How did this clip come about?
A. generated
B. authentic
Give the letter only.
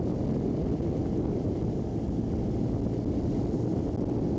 B